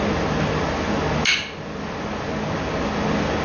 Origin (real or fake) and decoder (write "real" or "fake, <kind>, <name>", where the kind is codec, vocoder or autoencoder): real